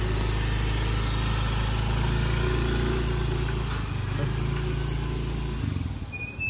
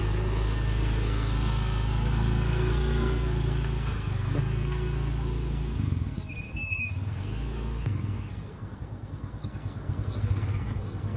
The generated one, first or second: second